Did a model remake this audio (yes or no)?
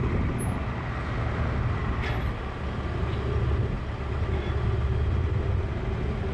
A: no